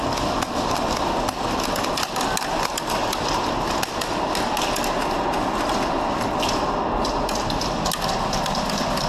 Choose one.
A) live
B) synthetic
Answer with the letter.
A